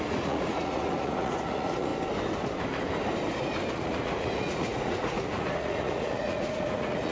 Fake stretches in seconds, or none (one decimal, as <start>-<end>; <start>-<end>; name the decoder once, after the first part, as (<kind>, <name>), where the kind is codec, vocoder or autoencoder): 0.0-1.9 (vocoder, Vocos); 3.7-7.1

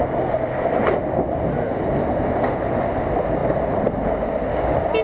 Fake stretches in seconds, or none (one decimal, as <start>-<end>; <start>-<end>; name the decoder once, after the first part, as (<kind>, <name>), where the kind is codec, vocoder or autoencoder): none

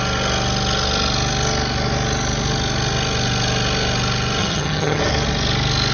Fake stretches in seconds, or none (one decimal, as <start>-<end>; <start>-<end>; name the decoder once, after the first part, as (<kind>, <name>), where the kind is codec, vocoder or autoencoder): 4.4-5.0 (vocoder, HiFi-GAN)

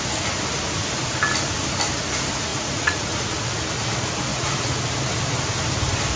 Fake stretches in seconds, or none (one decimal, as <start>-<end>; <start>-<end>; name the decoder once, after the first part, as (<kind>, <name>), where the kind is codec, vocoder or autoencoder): 2.5-3.4 (vocoder, Vocos); 4.3-4.8

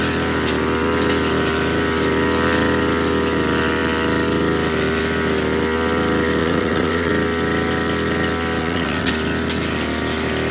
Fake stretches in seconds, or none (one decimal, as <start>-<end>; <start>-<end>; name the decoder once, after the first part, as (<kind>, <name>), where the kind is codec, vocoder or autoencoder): 6.4-7.1 (vocoder, WaveNeXt); 8.6-9.1

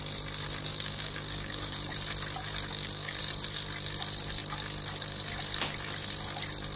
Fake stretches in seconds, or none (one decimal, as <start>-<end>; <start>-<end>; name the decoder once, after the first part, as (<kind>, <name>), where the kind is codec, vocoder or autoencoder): 0.7-1.8 (codec, DAC); 2.7-3.2

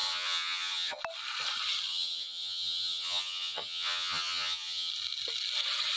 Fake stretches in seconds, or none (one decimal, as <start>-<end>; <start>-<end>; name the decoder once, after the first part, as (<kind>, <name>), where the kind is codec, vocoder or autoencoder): 0.0-1.0 (vocoder, HiFi-GAN); 1.9-4.9